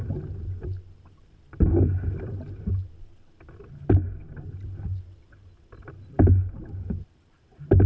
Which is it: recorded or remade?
recorded